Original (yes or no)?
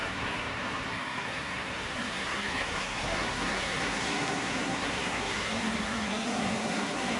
no